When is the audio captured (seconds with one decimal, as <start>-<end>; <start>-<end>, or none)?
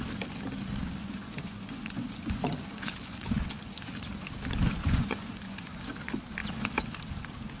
0.0-1.0; 3.5-4.8; 5.9-7.6